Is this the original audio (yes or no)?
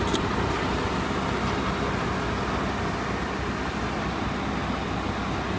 yes